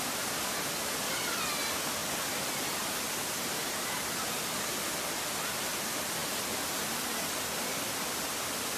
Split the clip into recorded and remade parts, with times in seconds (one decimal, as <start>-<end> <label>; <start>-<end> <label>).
0.0-8.8 recorded